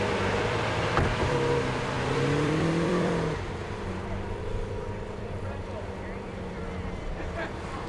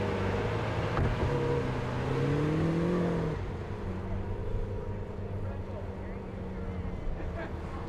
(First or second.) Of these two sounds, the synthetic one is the first